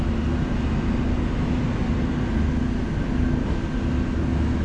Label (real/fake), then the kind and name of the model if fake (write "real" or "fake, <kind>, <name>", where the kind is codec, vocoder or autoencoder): real